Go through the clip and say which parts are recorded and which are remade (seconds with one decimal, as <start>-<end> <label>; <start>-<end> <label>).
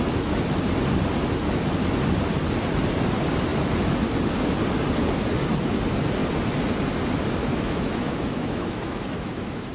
0.0-7.4 recorded; 7.4-9.7 remade